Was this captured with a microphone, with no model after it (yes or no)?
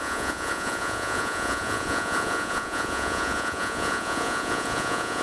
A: no